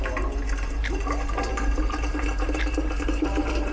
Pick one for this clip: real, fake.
fake